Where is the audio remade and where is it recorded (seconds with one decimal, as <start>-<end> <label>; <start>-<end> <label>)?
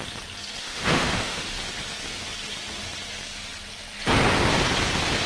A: 0.0-0.6 recorded; 0.6-1.4 remade; 1.4-5.3 recorded